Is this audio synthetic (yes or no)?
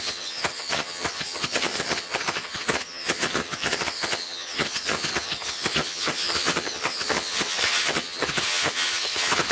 yes